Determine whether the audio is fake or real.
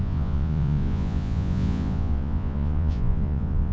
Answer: fake